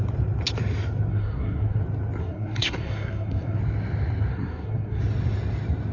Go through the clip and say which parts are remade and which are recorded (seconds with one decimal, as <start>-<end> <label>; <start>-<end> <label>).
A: 0.0-1.1 recorded; 1.1-1.8 remade; 1.8-2.2 recorded; 2.2-3.6 remade; 3.6-4.3 recorded; 4.3-5.0 remade; 5.0-5.9 recorded